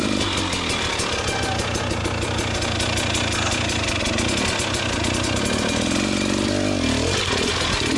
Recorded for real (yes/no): yes